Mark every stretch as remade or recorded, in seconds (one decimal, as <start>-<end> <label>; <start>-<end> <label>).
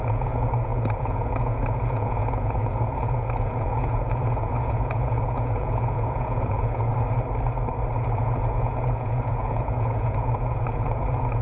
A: 0.0-6.9 remade; 6.9-8.2 recorded; 8.2-11.4 remade